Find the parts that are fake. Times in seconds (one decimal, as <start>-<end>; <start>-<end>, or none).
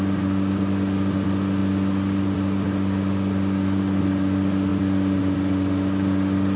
none